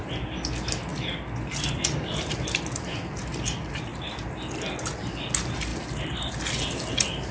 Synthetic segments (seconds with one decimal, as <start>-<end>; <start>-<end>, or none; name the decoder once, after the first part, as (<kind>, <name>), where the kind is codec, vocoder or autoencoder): none